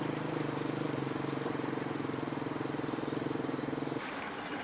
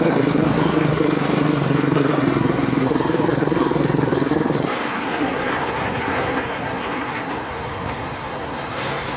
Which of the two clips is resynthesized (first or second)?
second